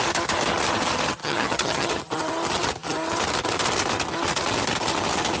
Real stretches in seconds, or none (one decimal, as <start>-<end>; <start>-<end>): 0.0-1.2; 1.9-5.4